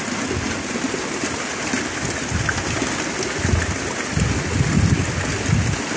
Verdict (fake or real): real